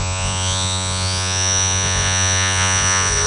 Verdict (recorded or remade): remade